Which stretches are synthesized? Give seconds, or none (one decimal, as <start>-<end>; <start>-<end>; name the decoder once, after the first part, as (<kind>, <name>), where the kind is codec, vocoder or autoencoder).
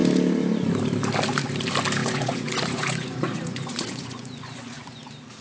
2.0-5.0 (vocoder, Vocos)